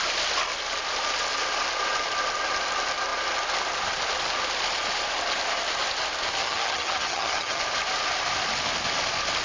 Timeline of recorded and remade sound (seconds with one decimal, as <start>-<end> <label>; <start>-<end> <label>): 0.0-6.4 recorded; 6.4-7.6 remade; 7.6-9.4 recorded